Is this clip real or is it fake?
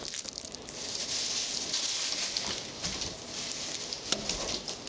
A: real